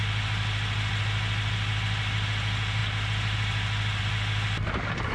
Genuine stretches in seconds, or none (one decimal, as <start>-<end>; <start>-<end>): 0.0-5.1